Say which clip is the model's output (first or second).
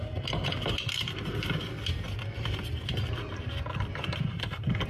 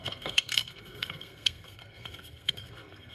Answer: second